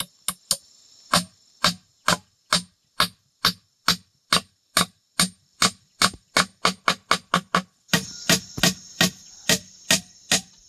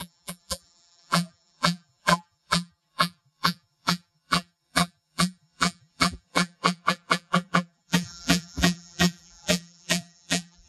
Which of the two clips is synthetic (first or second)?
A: second